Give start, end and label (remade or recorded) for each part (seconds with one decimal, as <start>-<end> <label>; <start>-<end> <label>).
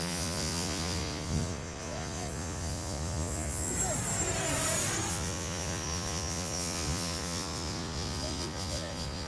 0.0-3.7 remade; 3.7-5.1 recorded; 5.1-9.3 remade